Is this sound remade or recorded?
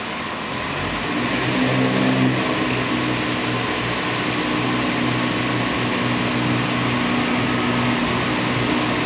recorded